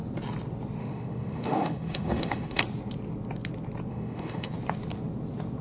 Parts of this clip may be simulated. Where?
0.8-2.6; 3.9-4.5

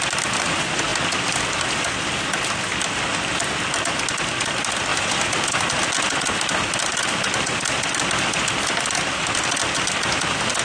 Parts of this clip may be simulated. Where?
none

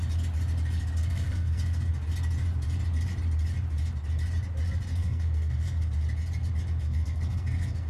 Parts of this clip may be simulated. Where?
1.0-1.9; 4.9-5.9; 6.8-7.9

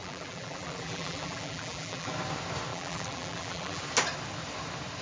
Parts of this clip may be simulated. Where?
0.0-2.1; 2.7-3.8

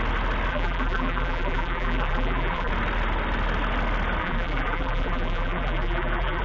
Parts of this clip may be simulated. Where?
0.5-2.7; 4.2-6.4

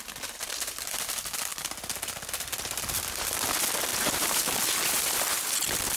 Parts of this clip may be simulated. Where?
3.9-4.6

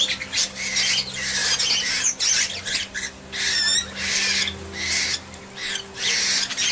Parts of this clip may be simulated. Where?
none